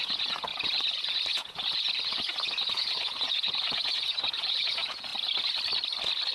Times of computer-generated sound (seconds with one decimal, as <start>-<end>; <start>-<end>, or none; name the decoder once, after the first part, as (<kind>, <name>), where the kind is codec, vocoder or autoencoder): 0.0-5.1 (vocoder, Vocos)